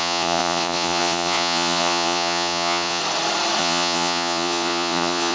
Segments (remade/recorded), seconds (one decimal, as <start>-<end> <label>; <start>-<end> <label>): 0.0-3.0 remade; 3.0-3.6 recorded; 3.6-5.3 remade